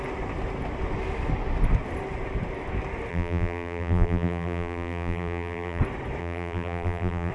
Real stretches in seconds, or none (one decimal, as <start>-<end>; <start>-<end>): 0.0-3.1; 5.8-6.2